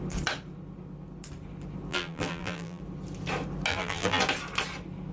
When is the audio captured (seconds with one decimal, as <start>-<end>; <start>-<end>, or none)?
0.0-1.9; 2.8-3.7; 4.2-5.1